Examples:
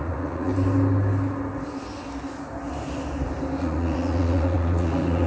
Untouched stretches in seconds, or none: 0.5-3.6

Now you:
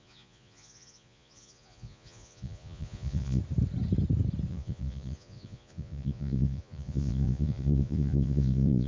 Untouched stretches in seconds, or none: 3.4-4.5

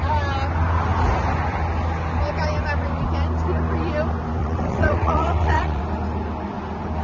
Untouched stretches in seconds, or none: 0.0-4.4; 5.8-7.0

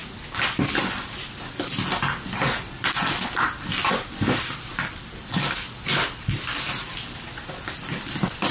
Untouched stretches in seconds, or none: 0.0-8.5

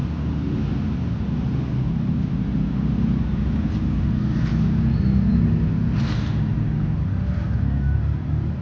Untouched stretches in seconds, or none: 0.0-8.6